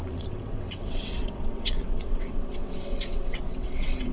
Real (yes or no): no